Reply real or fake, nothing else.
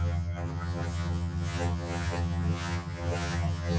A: fake